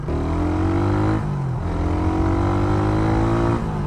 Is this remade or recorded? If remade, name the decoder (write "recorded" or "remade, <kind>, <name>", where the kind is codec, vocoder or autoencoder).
recorded